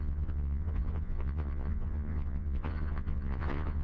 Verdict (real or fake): fake